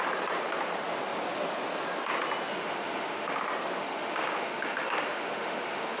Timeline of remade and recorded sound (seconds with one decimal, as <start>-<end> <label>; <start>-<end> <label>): 0.0-2.5 recorded; 2.5-3.4 remade; 3.4-3.8 recorded; 3.8-6.0 remade